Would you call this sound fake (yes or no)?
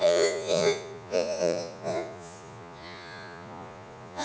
yes